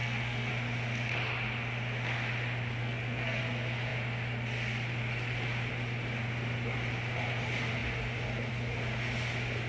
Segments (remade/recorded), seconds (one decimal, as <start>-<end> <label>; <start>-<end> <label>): 0.0-0.5 remade; 0.5-2.8 recorded; 2.8-3.4 remade; 3.4-9.7 recorded